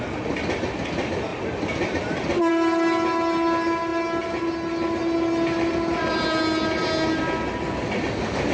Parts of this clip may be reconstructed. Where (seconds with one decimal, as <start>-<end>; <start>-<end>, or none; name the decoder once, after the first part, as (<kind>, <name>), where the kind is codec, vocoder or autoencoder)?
none